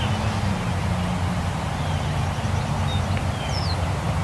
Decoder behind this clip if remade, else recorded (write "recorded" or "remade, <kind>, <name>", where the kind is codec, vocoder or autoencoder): recorded